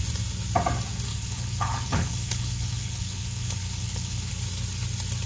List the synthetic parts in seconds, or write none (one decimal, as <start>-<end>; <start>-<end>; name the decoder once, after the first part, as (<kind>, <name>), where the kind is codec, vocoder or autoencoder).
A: 1.1-4.3 (codec, HILCodec)